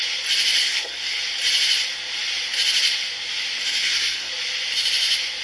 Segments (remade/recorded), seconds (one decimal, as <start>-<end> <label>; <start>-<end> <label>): 0.0-0.6 recorded; 0.6-1.2 remade; 1.2-3.8 recorded; 3.8-4.3 remade; 4.3-5.4 recorded